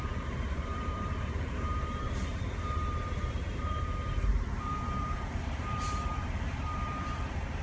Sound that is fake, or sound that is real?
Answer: fake